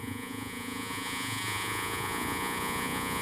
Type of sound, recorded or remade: remade